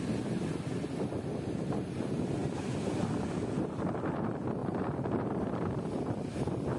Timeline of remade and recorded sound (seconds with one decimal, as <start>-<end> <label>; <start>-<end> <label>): 0.0-4.6 recorded; 4.6-5.7 remade; 5.7-6.8 recorded

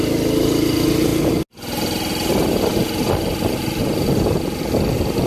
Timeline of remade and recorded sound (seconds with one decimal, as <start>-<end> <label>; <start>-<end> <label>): 0.0-5.3 recorded

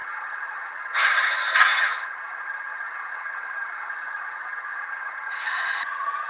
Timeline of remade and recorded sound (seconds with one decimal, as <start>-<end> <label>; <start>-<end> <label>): 0.0-6.3 remade

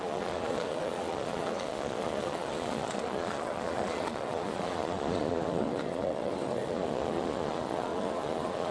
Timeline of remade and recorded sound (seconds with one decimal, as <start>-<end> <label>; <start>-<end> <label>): 0.0-8.7 remade

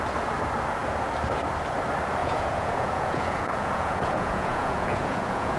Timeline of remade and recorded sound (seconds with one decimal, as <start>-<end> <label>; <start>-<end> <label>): 0.0-2.2 recorded; 2.2-5.6 remade

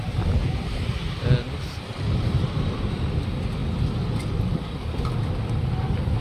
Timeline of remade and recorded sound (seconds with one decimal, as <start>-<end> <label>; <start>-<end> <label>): 0.0-6.2 recorded